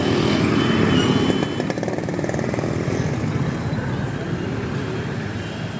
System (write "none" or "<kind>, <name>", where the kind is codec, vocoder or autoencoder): none